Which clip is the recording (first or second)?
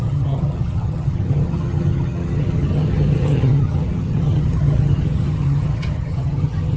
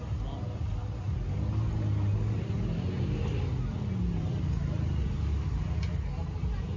second